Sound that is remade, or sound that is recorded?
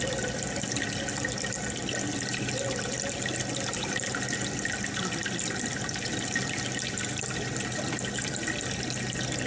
recorded